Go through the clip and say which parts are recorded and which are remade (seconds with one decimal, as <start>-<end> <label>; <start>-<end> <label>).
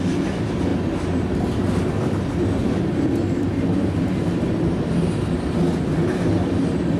0.0-7.0 recorded